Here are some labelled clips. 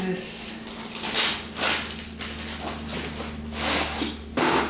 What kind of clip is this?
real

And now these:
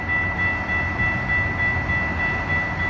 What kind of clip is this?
real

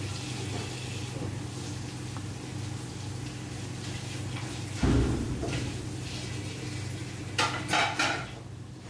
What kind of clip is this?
real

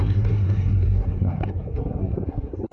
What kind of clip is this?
fake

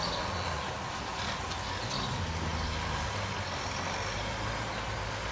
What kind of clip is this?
real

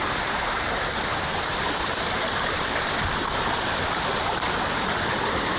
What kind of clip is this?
fake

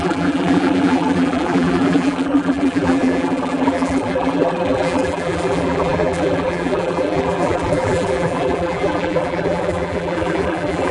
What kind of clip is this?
fake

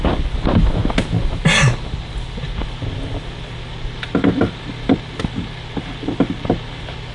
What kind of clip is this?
real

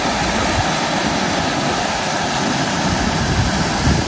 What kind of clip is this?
real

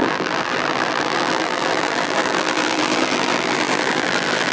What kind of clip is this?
fake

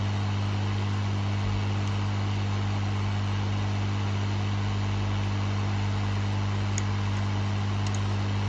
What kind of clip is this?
real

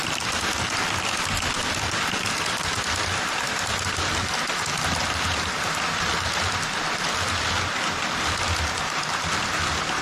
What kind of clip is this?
real